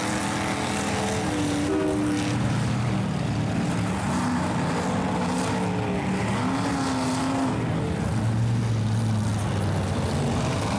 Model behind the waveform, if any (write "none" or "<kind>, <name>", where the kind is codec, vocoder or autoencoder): none